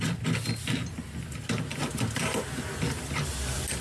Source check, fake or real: real